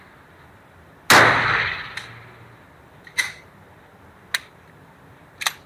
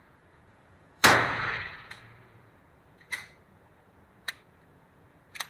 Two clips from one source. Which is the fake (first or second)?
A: second